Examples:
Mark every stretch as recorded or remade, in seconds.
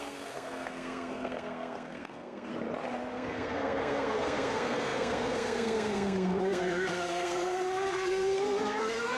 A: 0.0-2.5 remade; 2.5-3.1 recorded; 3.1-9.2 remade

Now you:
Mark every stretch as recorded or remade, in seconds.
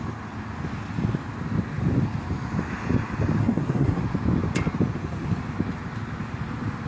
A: 0.0-3.4 recorded; 3.4-4.0 remade; 4.0-6.9 recorded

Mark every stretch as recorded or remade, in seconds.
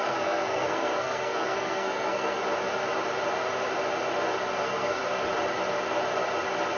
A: 0.0-2.4 remade; 2.4-4.6 recorded; 4.6-5.0 remade; 5.0-6.8 recorded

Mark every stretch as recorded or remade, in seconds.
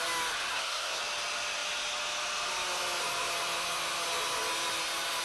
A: 0.0-0.5 recorded; 0.5-1.0 remade; 1.0-5.2 recorded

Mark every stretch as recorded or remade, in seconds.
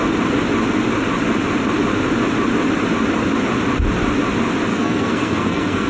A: 0.0-4.7 recorded; 4.7-5.9 remade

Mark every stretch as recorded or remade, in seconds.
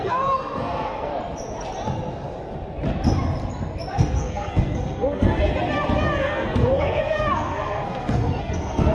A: 0.0-1.1 remade; 1.1-3.9 recorded; 3.9-5.5 remade; 5.5-6.2 recorded; 6.2-8.9 remade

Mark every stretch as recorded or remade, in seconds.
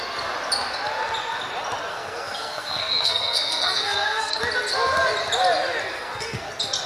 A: 0.0-1.9 recorded; 1.9-4.4 remade; 4.4-5.8 recorded; 5.8-6.5 remade; 6.5-6.9 recorded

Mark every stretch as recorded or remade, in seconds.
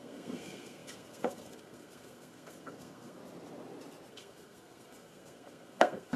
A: 0.0-3.2 remade; 3.2-4.1 recorded; 4.1-6.2 remade